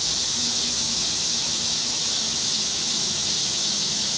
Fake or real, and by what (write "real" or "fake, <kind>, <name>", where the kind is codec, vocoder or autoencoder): fake, autoencoder, DAC-VAE